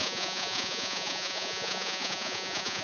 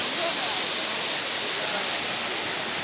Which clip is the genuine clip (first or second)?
second